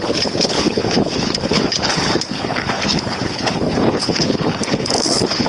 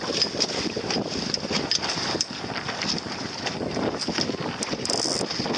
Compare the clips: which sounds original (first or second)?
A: second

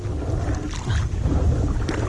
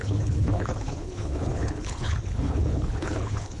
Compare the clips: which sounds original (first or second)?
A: first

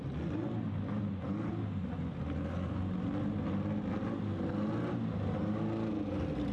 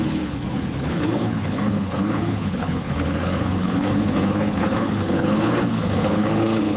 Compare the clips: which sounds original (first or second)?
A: first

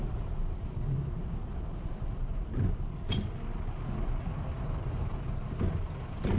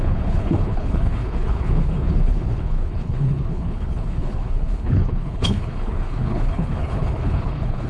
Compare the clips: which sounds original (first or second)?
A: first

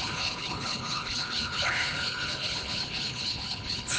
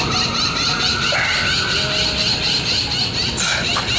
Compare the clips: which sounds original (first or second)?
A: second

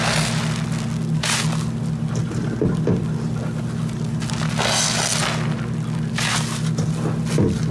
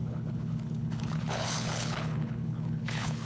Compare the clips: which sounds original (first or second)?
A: first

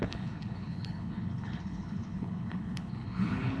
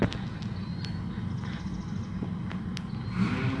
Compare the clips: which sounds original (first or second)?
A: second